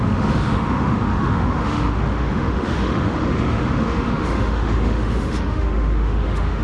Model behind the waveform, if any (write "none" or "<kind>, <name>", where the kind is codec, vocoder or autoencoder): autoencoder, DAC-VAE